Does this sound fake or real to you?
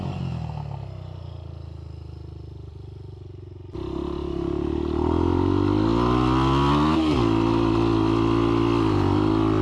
real